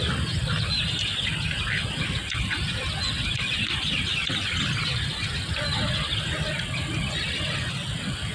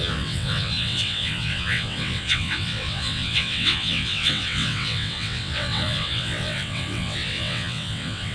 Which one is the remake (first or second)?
second